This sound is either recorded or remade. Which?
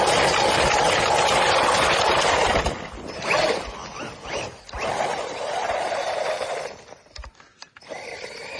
remade